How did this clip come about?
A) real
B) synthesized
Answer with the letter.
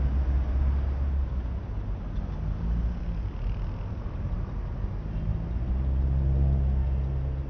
A